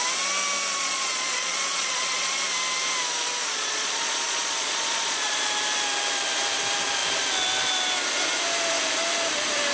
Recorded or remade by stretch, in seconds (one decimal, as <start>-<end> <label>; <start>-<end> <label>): 0.0-0.7 recorded; 0.7-2.4 remade; 2.4-3.4 recorded; 3.4-5.5 remade; 5.5-9.7 recorded